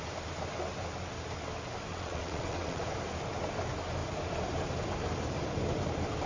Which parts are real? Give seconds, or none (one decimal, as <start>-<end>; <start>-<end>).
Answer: 0.0-1.9; 2.8-6.3